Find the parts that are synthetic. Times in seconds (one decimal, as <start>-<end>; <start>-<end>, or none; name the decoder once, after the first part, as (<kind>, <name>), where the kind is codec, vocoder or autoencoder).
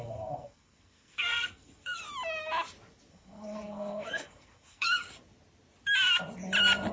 0.0-2.0 (codec, SNAC); 3.1-5.0